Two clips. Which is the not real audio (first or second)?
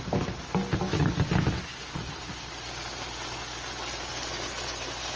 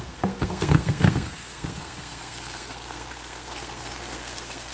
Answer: second